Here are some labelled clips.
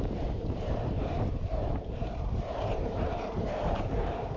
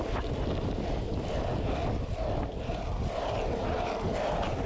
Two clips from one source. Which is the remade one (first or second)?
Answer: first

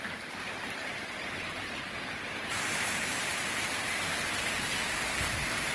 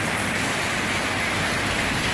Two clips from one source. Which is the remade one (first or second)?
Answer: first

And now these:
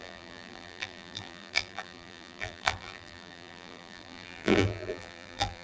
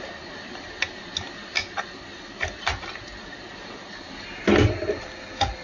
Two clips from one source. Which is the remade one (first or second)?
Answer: first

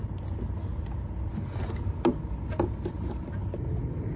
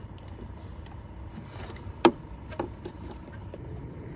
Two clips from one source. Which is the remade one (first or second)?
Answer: second